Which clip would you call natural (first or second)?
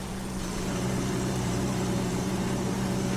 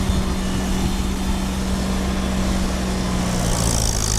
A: second